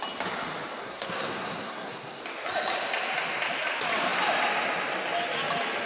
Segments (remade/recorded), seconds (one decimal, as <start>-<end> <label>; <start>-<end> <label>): 0.0-0.8 recorded; 0.8-2.2 remade; 2.2-5.9 recorded